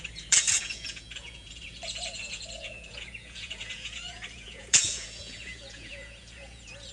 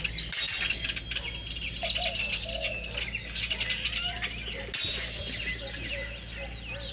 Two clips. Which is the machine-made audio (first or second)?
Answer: first